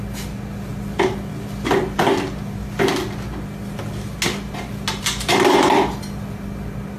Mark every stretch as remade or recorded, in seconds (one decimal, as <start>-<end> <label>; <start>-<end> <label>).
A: 0.0-7.0 recorded